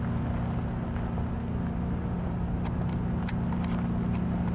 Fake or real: real